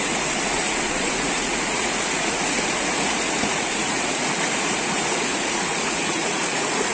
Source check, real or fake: fake